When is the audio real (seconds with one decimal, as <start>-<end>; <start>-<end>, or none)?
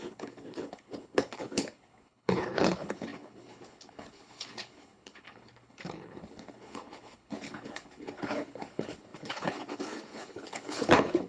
none